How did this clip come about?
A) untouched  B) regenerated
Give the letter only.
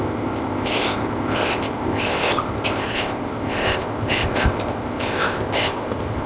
B